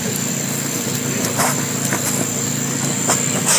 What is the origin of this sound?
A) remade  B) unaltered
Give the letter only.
B